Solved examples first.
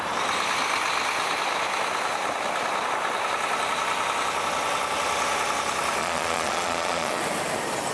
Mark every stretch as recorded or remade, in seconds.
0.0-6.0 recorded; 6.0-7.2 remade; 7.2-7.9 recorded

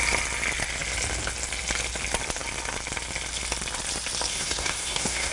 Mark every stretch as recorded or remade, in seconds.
0.0-4.3 recorded; 4.3-5.3 remade

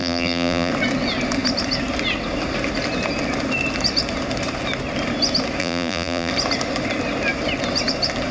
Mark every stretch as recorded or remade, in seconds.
0.0-0.7 remade; 0.7-5.6 recorded; 5.6-6.3 remade; 6.3-8.3 recorded

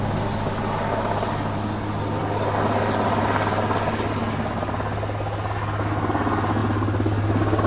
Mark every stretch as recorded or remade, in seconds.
0.0-7.7 recorded

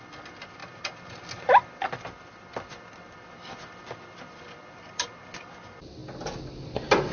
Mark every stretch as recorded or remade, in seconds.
0.0-6.0 remade; 6.0-6.5 recorded; 6.5-7.1 remade

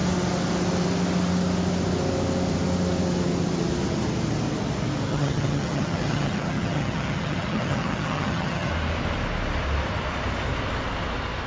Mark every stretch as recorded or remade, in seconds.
0.0-5.1 recorded; 5.1-8.7 remade; 8.7-11.5 recorded

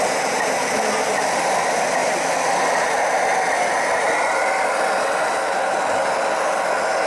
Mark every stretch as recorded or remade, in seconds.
0.0-7.1 recorded